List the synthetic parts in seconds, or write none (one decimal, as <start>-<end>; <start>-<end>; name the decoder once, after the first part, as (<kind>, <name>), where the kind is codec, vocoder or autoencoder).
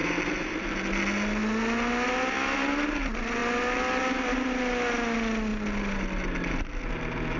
none